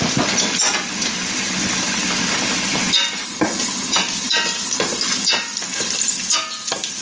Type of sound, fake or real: real